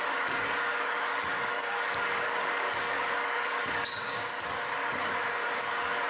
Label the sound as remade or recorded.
remade